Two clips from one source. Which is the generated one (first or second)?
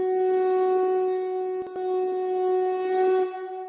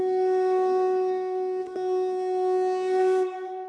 second